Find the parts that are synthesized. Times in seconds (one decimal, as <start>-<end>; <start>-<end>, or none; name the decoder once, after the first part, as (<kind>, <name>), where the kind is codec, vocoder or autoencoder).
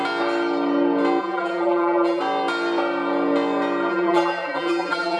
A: 1.2-2.2 (vocoder, BigVGAN v2); 3.9-5.2